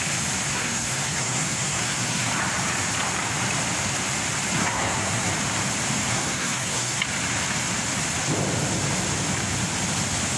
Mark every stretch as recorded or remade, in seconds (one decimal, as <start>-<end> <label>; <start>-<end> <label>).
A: 0.0-0.5 recorded; 0.5-2.3 remade; 2.3-4.6 recorded; 4.6-5.3 remade; 5.3-6.1 recorded; 6.1-7.0 remade; 7.0-10.4 recorded